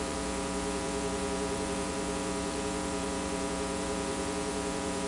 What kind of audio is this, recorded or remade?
remade